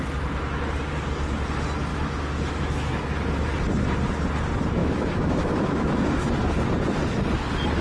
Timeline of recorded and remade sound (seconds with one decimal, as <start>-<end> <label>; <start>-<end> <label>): 0.0-1.9 recorded; 1.9-3.0 remade; 3.0-4.8 recorded; 4.8-6.3 remade; 6.3-7.8 recorded